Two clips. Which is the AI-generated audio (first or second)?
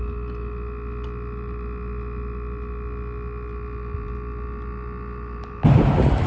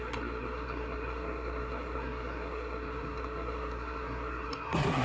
second